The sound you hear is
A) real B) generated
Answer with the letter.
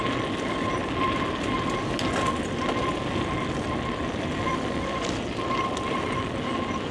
A